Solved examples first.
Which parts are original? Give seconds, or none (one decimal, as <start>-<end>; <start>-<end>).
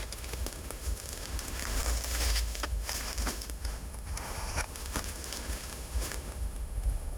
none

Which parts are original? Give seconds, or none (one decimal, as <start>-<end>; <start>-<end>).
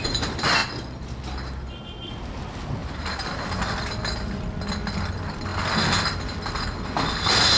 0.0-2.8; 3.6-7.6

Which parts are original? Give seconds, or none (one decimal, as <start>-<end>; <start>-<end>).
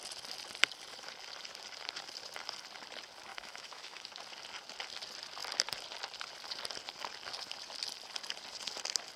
0.0-3.3; 4.1-9.2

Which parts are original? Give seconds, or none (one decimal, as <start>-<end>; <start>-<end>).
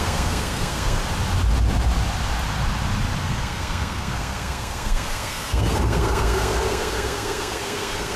1.0-3.2